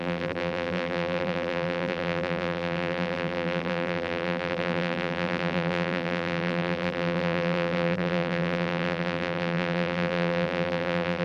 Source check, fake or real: fake